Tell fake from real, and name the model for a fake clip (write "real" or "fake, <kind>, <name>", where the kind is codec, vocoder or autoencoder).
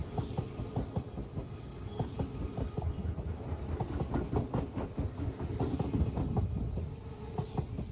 real